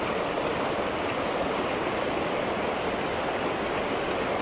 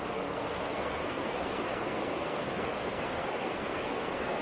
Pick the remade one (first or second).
second